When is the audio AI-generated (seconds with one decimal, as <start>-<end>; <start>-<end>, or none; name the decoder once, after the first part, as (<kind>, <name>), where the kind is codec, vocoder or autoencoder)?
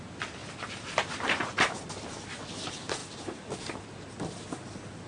0.4-2.1 (vocoder, BigVGAN v2); 3.0-4.0